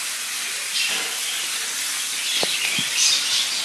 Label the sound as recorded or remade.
recorded